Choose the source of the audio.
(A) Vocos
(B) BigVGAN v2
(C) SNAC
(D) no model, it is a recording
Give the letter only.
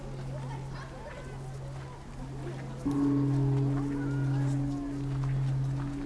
D